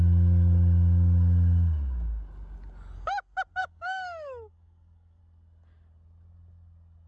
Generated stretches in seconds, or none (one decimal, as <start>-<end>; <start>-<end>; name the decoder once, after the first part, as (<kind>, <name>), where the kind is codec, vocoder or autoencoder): 3.6-5.2 (codec, DAC)